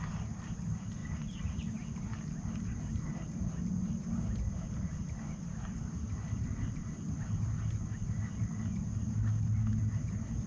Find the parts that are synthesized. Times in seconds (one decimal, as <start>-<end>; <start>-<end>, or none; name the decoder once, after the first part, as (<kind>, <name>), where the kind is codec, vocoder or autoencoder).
1.0-1.6 (vocoder, BigVGAN v2)